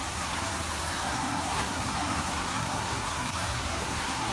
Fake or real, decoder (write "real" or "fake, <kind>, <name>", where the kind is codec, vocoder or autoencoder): fake, codec, SNAC